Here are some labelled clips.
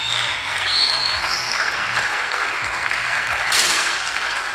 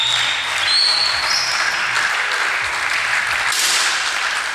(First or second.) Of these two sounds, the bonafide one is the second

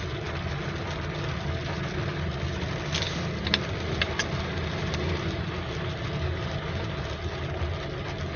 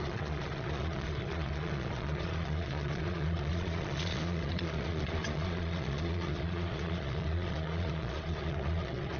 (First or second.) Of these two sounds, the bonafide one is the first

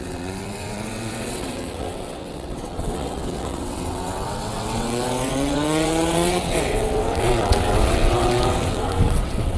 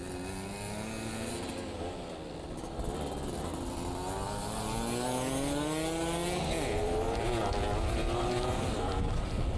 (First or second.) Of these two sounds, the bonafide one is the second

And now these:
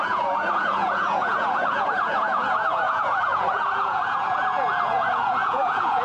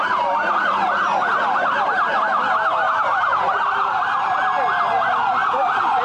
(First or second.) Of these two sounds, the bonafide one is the second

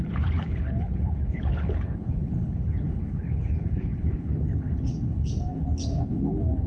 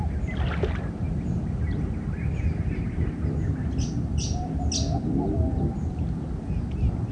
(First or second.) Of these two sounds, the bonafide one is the second